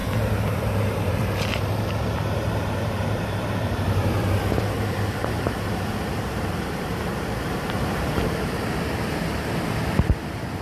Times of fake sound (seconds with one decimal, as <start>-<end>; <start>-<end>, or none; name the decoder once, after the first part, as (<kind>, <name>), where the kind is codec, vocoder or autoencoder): 0.0-4.3 (vocoder, BigVGAN v2); 5.2-9.5